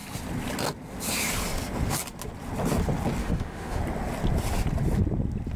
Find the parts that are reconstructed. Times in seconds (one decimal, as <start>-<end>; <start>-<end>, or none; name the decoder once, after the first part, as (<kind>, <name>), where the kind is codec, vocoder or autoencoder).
3.2-3.8 (autoencoder, DAC-VAE)